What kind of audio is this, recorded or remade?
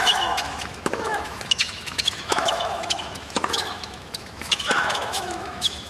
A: remade